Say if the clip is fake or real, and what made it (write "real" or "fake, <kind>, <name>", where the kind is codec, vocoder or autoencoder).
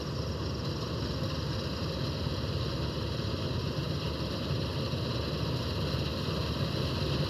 real